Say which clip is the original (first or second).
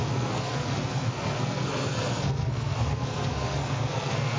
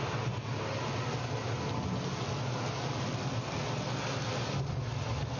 second